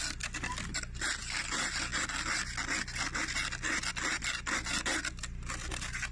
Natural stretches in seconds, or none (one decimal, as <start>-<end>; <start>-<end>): 0.0-6.1

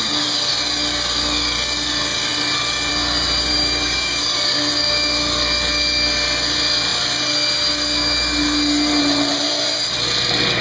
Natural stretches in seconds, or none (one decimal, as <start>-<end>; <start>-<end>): 0.0-3.5; 4.2-10.6

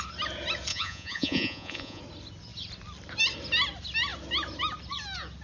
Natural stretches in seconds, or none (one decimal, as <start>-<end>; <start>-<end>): 0.0-0.7; 2.0-5.4

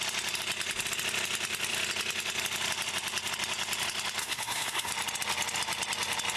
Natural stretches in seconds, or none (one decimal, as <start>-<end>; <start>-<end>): 0.0-4.2; 4.9-6.4

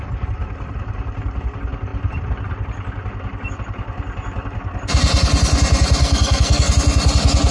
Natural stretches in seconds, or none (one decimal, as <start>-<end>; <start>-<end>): 0.0-6.0; 6.7-7.5